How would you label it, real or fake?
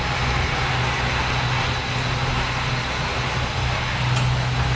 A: real